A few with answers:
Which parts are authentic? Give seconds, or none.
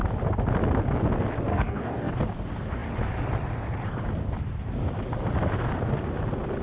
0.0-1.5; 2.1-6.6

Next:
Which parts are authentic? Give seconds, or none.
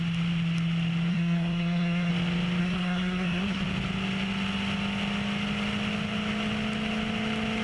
0.0-1.1; 2.1-2.6; 3.6-7.6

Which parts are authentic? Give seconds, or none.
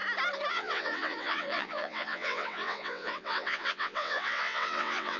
0.0-0.5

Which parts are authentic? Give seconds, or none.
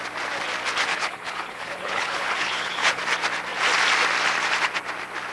0.0-0.9; 3.0-5.3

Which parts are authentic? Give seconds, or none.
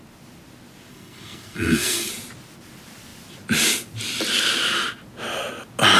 0.0-0.9; 2.1-6.0